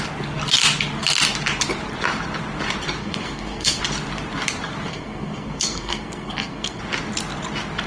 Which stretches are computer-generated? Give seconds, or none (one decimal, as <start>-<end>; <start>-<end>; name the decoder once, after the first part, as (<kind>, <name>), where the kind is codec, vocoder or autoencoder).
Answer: 3.0-3.8 (codec, SNAC); 4.9-6.8